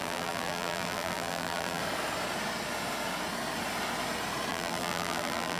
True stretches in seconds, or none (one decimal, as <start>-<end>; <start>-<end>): 1.8-4.5